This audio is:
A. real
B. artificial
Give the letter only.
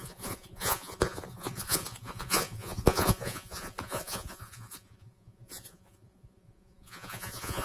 B